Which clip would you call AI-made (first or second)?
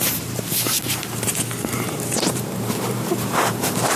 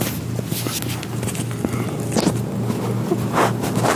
first